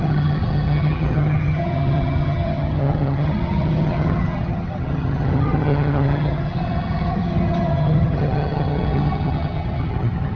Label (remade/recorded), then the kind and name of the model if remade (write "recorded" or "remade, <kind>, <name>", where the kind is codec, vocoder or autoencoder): remade, vocoder, HiFi-GAN